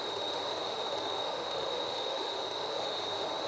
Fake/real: fake